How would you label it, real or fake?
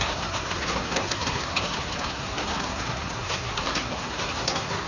fake